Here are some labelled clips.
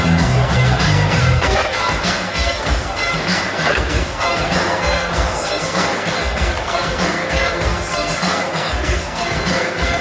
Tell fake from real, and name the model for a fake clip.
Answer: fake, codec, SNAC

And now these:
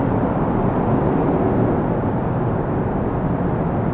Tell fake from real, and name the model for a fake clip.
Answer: real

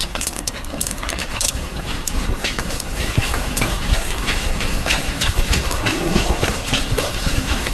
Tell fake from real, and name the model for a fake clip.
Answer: fake, codec, SNAC